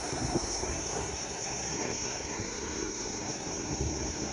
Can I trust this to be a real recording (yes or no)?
no